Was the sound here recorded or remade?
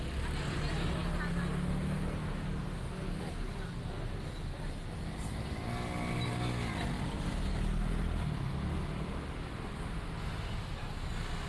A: recorded